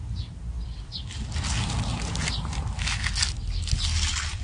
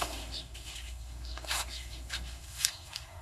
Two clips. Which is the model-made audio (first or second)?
second